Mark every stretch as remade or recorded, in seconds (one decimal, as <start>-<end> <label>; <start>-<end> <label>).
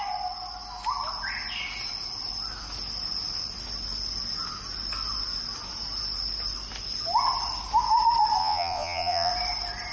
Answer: 0.0-8.4 recorded; 8.4-9.3 remade; 9.3-9.9 recorded